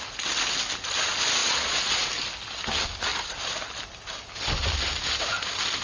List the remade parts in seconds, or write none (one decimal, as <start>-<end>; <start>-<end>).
1.4-2.1